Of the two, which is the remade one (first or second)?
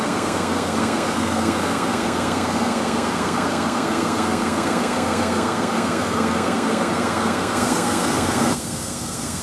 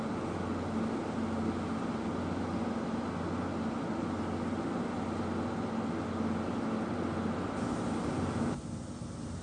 first